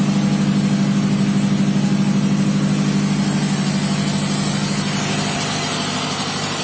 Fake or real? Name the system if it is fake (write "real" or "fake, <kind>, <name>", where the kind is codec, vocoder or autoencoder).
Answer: real